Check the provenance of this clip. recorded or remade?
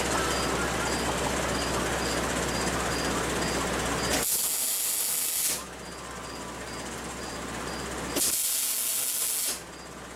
recorded